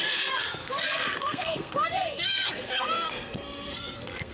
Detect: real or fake fake